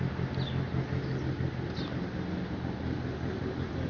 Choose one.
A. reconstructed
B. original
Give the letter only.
B